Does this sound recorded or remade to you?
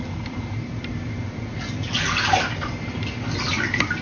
recorded